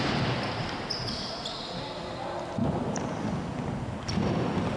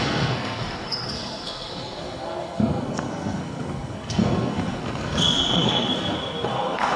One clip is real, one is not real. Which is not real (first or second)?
second